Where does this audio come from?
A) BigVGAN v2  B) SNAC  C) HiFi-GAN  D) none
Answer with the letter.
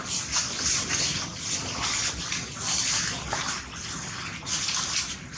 D